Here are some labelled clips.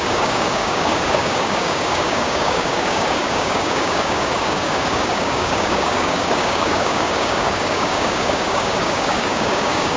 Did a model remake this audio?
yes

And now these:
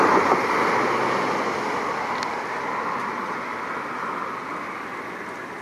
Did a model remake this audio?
no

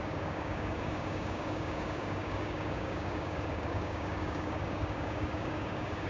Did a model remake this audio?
yes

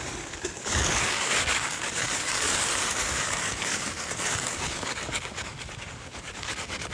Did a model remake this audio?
yes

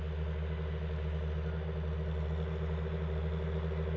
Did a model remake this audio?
no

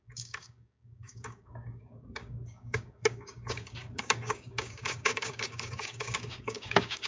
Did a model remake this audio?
yes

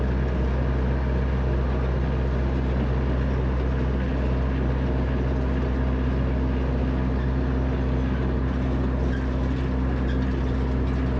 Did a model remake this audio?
no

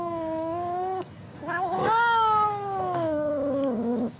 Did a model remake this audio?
yes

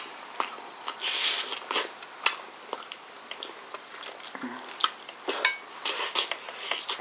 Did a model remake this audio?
no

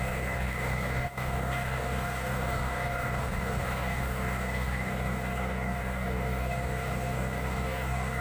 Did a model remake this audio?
yes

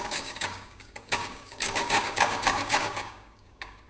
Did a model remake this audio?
yes